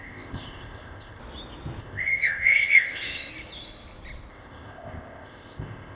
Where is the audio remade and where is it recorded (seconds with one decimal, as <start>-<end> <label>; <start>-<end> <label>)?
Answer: 0.0-1.2 remade; 1.2-1.8 recorded; 1.8-3.3 remade; 3.3-4.3 recorded; 4.3-6.0 remade